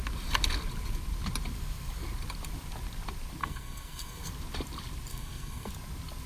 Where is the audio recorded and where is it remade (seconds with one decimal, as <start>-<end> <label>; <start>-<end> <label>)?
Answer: 0.0-3.4 recorded; 3.4-4.3 remade; 4.3-5.1 recorded; 5.1-5.7 remade; 5.7-6.3 recorded